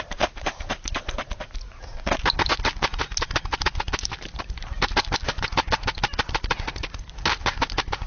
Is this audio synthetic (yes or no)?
no